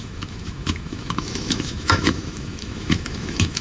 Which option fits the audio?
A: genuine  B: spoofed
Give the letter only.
B